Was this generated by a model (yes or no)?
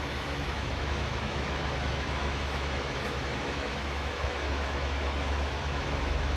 yes